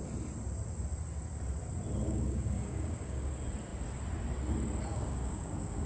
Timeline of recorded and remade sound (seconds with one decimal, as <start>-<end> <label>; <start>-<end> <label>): 0.0-2.0 recorded; 2.0-3.3 remade; 3.3-4.9 recorded; 4.9-5.9 remade